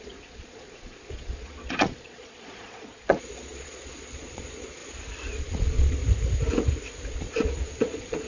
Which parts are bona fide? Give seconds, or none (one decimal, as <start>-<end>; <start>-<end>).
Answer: 4.8-5.4; 6.0-7.1